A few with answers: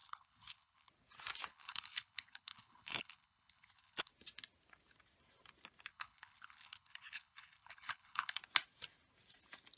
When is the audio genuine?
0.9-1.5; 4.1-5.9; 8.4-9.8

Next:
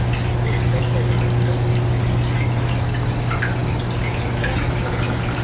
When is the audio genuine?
0.0-5.4

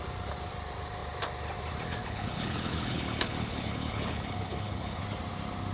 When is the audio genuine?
0.0-2.0; 5.0-5.7

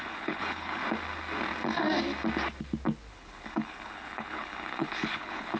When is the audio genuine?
0.8-3.1

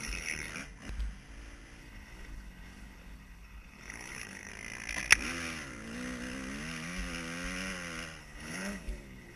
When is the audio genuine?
0.5-1.8; 4.5-8.2

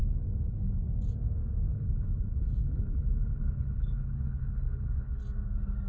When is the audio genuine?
0.9-1.7; 5.2-5.9